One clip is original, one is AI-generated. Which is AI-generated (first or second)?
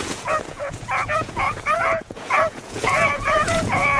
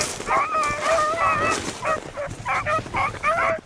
first